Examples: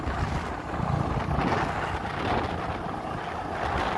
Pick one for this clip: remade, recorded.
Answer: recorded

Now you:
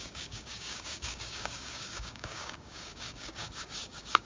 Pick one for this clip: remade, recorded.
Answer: remade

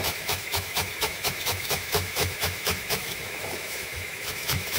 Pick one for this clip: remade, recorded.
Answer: remade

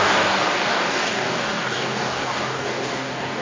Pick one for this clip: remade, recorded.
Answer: remade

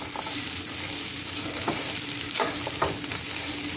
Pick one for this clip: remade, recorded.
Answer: recorded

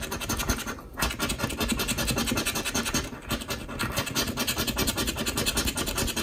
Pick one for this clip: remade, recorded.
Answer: recorded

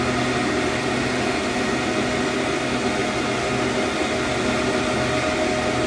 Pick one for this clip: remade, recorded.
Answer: recorded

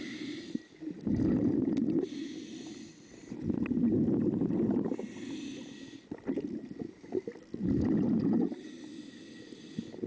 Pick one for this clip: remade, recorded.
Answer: recorded